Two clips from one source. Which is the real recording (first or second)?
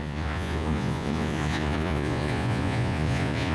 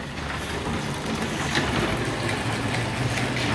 second